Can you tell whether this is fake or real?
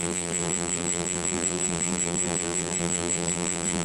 fake